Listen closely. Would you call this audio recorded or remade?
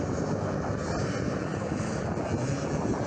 recorded